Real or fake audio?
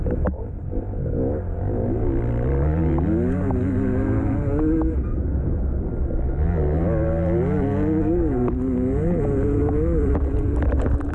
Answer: real